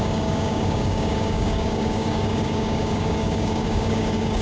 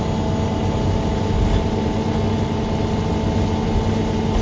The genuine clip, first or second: second